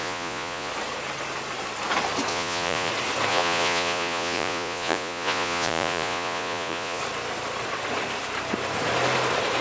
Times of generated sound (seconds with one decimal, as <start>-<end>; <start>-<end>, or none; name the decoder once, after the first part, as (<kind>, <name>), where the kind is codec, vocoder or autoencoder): 0.0-0.7 (vocoder, Vocos); 2.3-2.9; 3.3-7.0